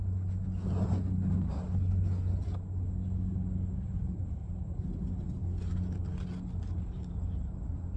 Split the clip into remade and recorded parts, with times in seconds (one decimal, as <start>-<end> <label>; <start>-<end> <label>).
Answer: 0.0-8.0 recorded